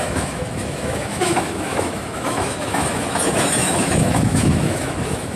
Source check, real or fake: fake